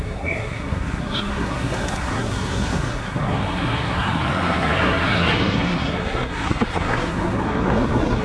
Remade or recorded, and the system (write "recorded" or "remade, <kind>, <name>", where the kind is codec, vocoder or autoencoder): remade, codec, SNAC